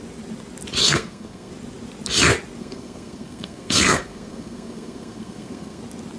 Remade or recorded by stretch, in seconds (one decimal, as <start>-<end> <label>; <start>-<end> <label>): 0.0-0.8 recorded; 0.8-1.5 remade; 1.5-2.6 recorded; 2.6-5.8 remade; 5.8-6.2 recorded